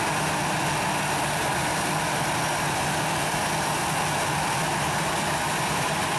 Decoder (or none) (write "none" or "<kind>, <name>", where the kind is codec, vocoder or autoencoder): none